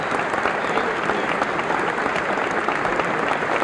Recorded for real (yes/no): yes